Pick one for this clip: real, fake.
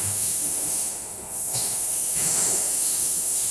fake